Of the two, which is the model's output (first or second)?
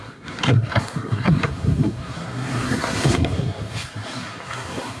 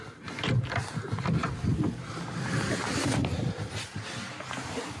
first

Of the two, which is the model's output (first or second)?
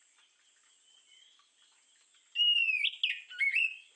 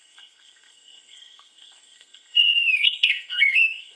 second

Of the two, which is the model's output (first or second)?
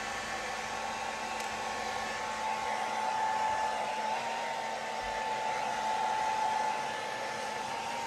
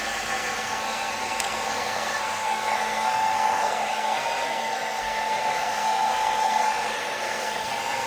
second